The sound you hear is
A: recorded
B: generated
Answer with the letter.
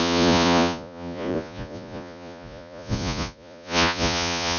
B